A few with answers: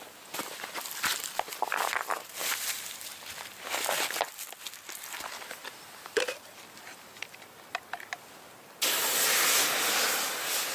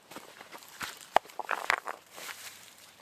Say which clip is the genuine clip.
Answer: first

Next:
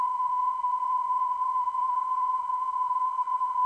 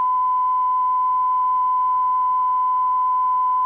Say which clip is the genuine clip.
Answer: second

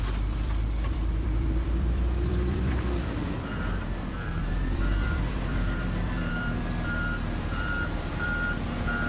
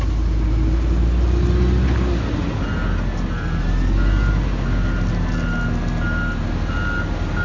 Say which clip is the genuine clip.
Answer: second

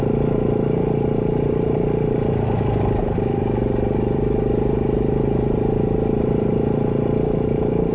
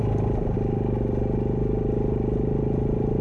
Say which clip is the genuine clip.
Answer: second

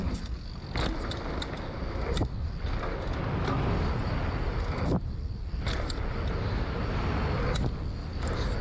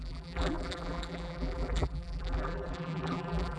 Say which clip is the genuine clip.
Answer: first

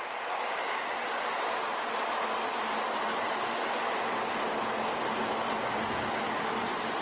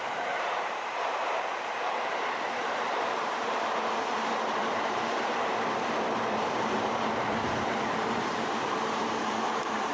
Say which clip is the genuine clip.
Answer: first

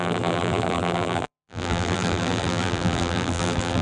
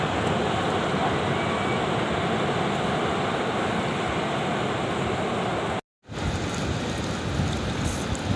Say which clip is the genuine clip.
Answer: second